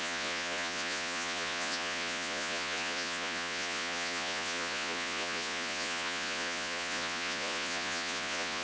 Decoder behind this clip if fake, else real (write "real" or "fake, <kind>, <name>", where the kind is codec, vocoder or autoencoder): fake, vocoder, Vocos